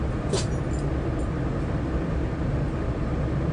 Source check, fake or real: real